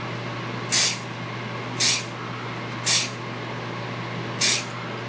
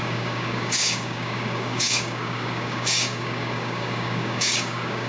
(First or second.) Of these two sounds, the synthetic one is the second